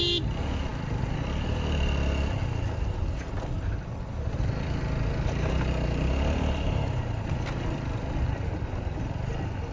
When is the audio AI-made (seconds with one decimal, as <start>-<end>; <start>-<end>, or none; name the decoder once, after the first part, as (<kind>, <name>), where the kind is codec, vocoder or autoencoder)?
none

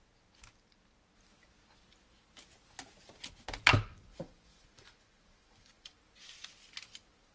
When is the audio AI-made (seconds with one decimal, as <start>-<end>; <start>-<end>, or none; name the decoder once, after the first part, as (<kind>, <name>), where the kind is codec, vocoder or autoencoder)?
3.9-5.9 (vocoder, Vocos)

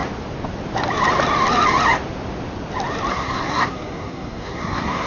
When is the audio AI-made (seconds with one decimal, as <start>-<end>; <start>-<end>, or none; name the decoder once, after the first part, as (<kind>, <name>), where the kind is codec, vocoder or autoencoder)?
3.1-5.1 (codec, SNAC)

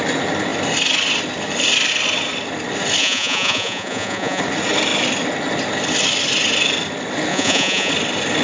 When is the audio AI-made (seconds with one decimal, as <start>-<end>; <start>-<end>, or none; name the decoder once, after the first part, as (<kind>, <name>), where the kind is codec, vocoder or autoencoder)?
3.0-4.4 (vocoder, Vocos); 7.3-7.9

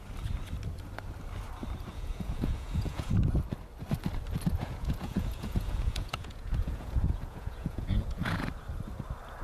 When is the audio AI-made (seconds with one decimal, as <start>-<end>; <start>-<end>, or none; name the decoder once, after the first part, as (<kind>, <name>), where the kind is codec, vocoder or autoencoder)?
1.9-3.1 (vocoder, Vocos); 4.6-8.5